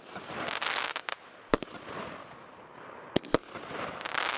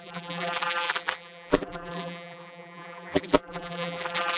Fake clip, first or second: second